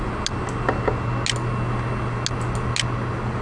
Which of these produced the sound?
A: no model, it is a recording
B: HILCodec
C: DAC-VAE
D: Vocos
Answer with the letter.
A